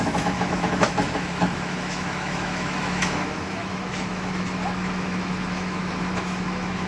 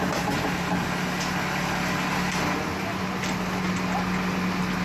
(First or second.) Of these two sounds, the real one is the second